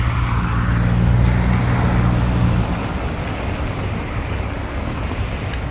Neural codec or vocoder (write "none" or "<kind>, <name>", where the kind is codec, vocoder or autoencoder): none